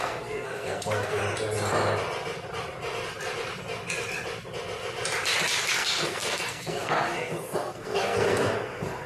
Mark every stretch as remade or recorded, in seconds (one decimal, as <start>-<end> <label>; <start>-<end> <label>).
0.0-1.2 remade; 1.2-5.7 recorded; 5.7-9.1 remade